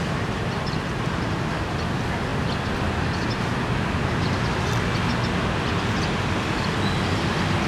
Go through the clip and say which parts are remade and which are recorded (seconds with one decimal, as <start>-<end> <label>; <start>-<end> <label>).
0.0-1.7 remade; 1.7-7.7 recorded